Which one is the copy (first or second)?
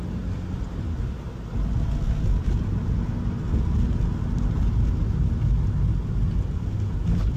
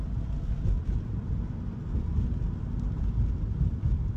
second